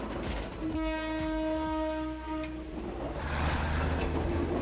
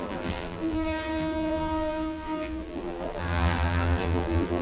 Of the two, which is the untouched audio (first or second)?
first